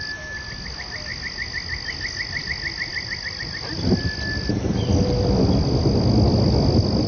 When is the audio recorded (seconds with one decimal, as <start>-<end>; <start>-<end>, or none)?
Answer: 0.0-7.1